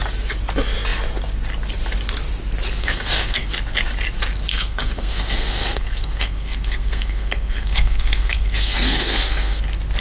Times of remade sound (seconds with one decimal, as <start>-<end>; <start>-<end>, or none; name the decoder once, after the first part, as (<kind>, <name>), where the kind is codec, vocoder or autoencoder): 2.8-3.5 (codec, SNAC); 4.5-9.6